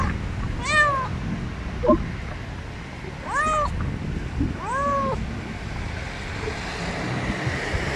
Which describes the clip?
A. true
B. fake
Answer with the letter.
A